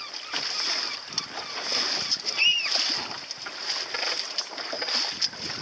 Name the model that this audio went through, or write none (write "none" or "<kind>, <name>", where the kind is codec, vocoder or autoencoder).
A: none